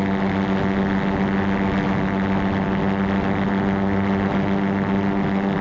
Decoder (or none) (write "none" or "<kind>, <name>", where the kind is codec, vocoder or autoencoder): none